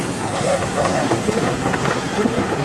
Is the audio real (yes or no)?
no